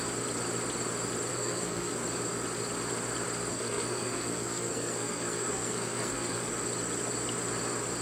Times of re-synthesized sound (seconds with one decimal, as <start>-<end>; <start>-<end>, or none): 1.3-1.9; 3.5-6.5